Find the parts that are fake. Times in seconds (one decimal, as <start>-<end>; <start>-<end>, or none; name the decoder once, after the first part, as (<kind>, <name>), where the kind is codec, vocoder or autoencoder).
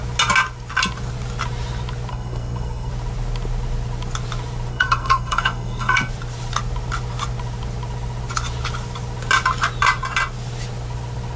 2.1-2.9 (codec, SNAC); 4.7-6.1